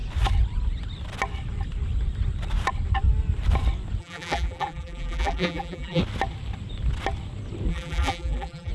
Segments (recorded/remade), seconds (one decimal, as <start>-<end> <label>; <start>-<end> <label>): 0.0-4.0 recorded; 4.0-6.0 remade; 6.0-7.7 recorded; 7.7-8.7 remade